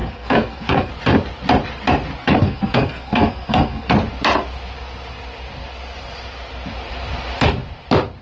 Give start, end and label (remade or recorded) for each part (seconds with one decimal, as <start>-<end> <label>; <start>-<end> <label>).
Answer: 0.0-0.9 remade; 0.9-2.2 recorded; 2.2-3.9 remade; 3.9-8.2 recorded